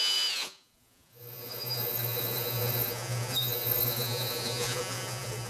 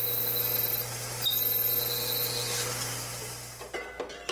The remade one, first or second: first